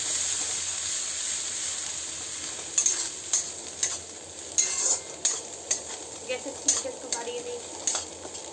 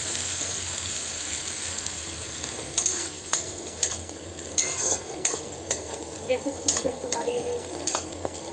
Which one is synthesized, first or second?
second